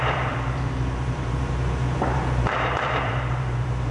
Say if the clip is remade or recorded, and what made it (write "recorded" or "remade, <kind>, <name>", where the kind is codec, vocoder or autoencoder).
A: remade, vocoder, BigVGAN v2